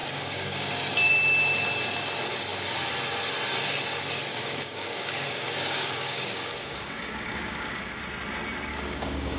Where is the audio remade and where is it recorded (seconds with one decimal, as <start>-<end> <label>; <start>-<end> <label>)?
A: 0.0-0.7 remade; 0.7-4.3 recorded; 4.3-8.0 remade; 8.0-8.7 recorded; 8.7-9.4 remade